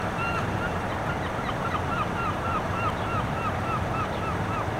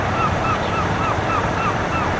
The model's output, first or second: second